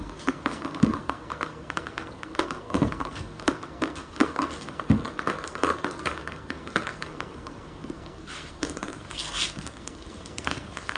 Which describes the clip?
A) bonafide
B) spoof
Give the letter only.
B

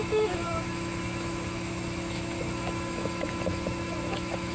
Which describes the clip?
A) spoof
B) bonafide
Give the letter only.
A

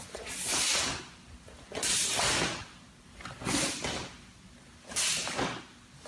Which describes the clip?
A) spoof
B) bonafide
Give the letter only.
B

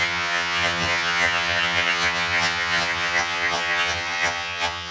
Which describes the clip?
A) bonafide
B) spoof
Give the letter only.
B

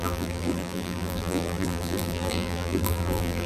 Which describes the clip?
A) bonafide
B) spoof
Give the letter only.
B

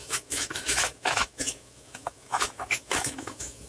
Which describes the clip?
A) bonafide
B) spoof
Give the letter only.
B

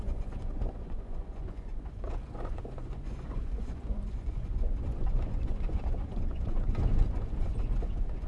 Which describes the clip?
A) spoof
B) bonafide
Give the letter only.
A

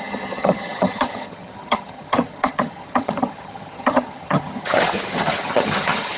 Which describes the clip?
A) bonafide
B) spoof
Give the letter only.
B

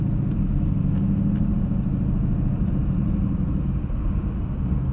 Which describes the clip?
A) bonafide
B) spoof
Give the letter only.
A